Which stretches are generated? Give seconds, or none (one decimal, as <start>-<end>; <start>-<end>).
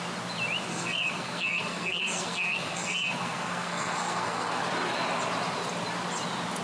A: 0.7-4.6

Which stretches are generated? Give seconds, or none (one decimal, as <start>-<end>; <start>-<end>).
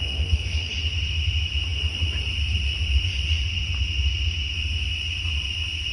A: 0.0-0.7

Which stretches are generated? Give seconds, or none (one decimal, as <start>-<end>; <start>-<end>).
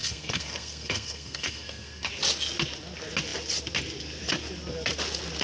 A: 0.0-2.1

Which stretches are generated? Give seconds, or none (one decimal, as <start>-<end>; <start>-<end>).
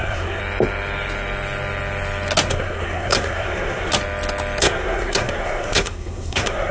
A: 0.0-0.4; 2.5-3.9; 4.6-6.7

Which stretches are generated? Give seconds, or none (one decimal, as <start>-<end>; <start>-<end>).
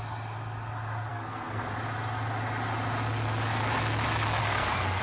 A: 1.1-1.7; 4.4-5.0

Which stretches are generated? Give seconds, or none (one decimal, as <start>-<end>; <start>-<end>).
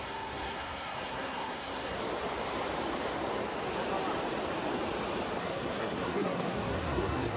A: 0.0-2.0; 5.4-7.4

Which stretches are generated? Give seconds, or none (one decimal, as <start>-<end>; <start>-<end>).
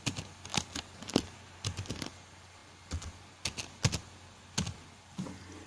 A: none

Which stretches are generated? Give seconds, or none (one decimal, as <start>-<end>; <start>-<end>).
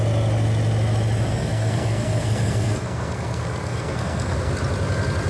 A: 1.3-4.5